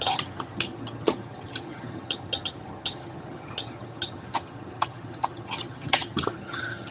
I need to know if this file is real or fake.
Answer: fake